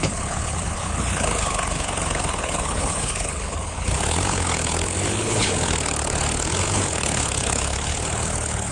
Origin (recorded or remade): remade